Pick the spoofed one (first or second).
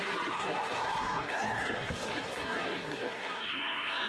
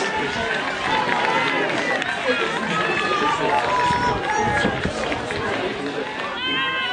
first